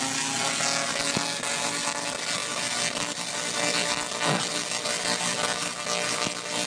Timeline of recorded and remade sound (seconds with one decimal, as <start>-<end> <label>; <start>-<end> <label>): 0.0-6.7 recorded